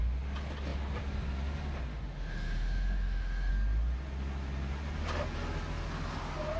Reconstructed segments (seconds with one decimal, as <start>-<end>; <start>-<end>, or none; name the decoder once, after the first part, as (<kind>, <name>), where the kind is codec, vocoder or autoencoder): 1.9-3.5 (autoencoder, DAC-VAE)